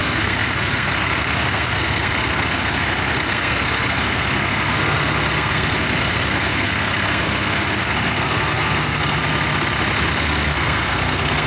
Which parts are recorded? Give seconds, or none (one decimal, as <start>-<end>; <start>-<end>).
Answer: 9.2-10.2

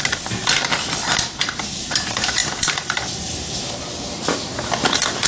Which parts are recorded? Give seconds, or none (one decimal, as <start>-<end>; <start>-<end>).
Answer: 0.0-5.3

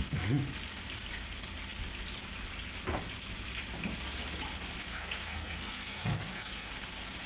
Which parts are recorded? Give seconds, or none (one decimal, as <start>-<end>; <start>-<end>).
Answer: 0.0-4.9; 6.7-7.3

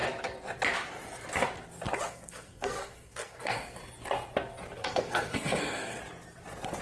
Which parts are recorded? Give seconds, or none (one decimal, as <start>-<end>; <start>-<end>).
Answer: 0.0-2.1; 3.8-4.8; 6.0-6.8

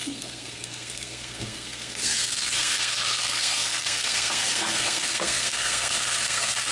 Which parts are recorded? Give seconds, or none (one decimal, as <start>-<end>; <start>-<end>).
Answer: none

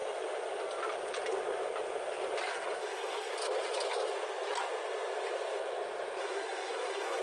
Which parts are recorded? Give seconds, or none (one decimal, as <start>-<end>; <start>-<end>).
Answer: 0.0-2.5; 3.3-6.2

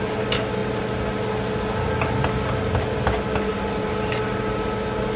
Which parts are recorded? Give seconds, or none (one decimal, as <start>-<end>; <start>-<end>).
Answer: 0.0-5.2